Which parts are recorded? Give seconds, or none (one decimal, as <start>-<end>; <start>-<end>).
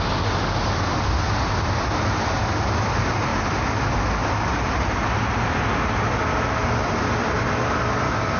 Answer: 0.0-8.4